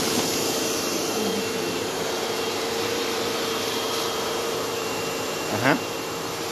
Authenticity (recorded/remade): remade